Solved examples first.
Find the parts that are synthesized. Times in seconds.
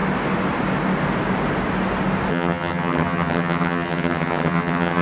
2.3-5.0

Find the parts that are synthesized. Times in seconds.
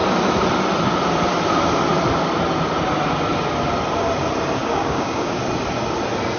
4.6-5.4